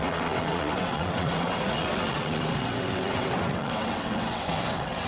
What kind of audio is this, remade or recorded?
remade